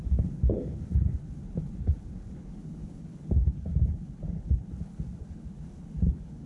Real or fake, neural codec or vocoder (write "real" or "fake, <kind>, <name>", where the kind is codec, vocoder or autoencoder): fake, codec, HILCodec